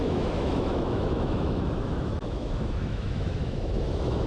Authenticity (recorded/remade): remade